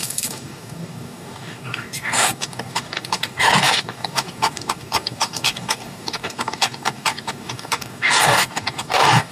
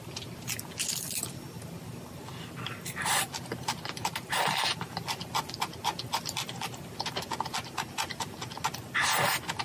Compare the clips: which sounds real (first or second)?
second